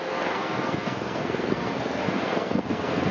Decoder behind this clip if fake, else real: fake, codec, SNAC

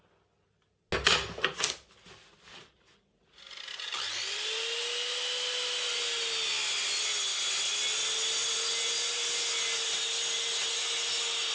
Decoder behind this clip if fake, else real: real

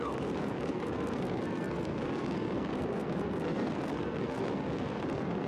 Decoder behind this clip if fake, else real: fake, codec, SNAC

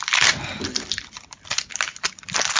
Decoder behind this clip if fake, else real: real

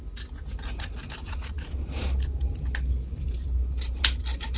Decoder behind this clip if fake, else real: real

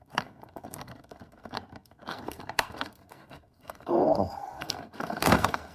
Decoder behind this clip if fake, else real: fake, codec, SNAC